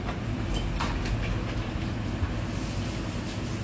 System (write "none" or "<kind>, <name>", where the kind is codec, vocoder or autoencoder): none